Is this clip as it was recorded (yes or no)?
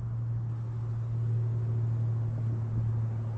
yes